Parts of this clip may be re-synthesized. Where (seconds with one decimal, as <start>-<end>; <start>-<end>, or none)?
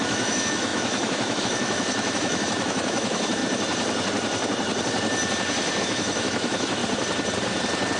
0.0-3.4; 5.8-6.8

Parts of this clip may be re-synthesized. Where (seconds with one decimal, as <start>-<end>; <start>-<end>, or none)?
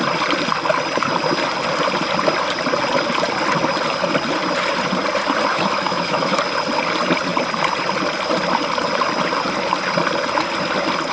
5.5-6.4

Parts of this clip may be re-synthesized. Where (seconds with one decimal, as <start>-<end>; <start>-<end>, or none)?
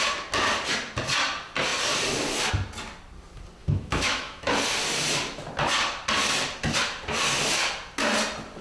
3.6-4.5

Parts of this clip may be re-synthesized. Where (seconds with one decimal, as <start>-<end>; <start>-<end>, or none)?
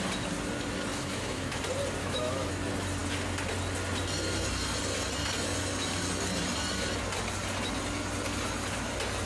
0.9-1.6; 2.0-2.5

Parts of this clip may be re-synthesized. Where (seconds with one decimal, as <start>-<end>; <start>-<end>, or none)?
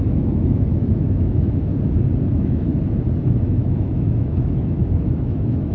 0.0-1.7; 2.2-2.7; 3.2-5.7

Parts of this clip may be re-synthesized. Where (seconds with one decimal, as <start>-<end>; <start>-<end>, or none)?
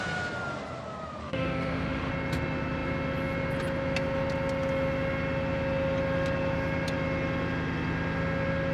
1.2-2.1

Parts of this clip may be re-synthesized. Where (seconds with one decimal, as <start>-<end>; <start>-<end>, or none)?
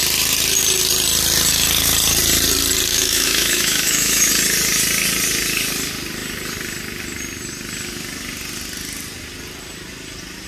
2.9-4.3